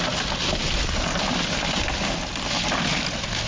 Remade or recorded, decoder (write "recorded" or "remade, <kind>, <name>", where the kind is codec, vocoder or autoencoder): recorded